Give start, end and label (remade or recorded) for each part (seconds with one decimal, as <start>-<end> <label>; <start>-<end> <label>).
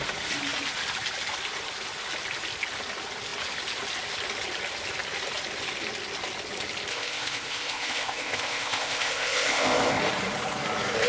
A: 0.0-6.9 recorded; 6.9-10.0 remade; 10.0-11.1 recorded